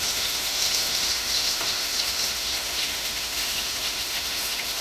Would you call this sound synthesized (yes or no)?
yes